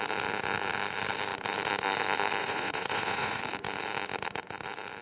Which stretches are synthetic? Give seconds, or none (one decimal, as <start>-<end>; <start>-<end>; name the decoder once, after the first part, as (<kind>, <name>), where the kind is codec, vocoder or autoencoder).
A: 2.4-3.4 (vocoder, Vocos)